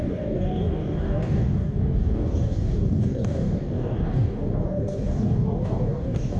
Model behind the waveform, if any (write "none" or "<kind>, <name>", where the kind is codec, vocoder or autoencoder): codec, DAC